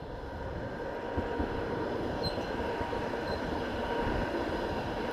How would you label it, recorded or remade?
recorded